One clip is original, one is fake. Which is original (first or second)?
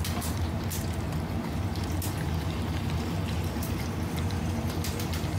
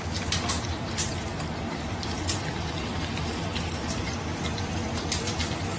first